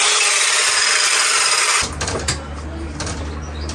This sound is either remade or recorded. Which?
recorded